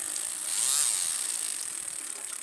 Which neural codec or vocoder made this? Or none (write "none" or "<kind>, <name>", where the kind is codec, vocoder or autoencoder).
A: none